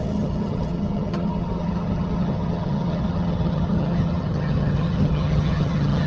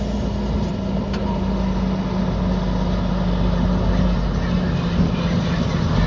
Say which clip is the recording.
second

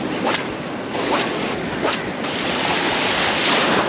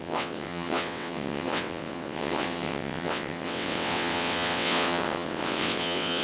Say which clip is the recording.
first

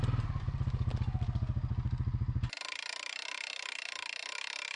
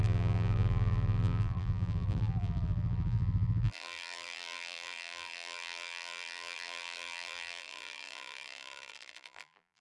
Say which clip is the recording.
first